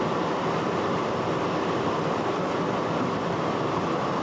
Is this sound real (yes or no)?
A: yes